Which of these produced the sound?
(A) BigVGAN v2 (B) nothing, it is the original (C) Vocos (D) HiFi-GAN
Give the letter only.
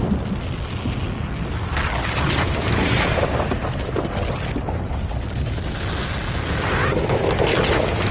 B